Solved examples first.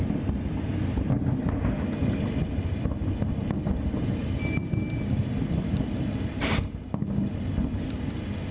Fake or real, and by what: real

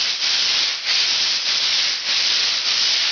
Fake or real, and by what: real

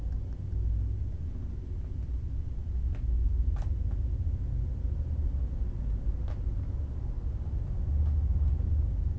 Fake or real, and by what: real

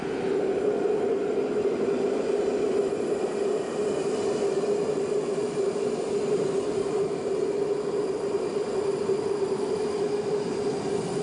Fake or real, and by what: real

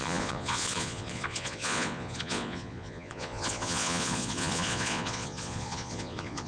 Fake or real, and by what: fake, vocoder, Vocos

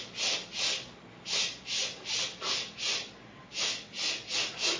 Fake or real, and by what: real